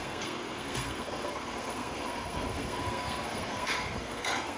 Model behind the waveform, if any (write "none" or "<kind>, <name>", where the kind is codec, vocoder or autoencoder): codec, SNAC